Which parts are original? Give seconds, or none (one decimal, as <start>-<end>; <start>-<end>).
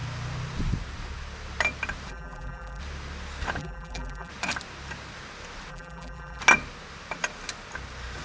0.0-2.1; 2.8-3.6; 4.3-5.7; 6.4-8.2